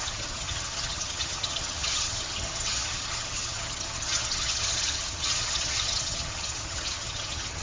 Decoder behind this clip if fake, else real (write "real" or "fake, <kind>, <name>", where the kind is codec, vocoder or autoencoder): fake, vocoder, HiFi-GAN